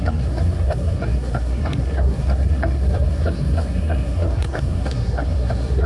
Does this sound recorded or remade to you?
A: remade